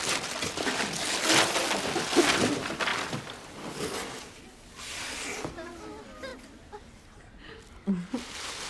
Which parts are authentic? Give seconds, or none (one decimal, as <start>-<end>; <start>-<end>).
0.0-8.7